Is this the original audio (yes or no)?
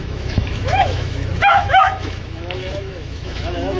no